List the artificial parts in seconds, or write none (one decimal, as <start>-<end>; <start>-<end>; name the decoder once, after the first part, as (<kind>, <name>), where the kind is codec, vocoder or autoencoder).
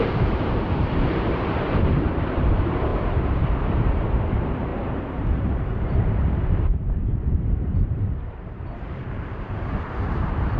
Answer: 0.0-10.6 (vocoder, BigVGAN v2)